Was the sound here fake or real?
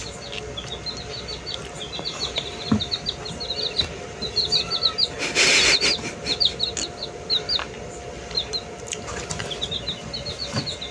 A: real